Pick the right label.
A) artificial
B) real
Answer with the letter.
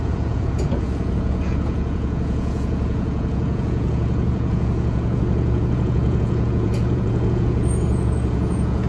A